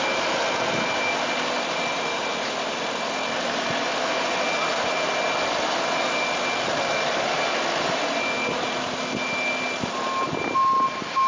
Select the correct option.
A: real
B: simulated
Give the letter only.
A